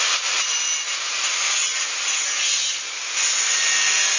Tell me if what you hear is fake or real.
real